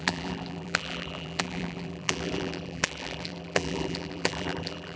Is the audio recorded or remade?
remade